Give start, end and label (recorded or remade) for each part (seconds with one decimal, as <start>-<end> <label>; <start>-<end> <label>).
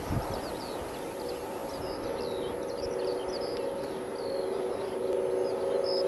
0.0-6.1 recorded